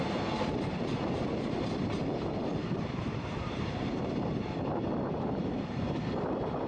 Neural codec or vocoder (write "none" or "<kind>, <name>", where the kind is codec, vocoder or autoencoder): vocoder, BigVGAN v2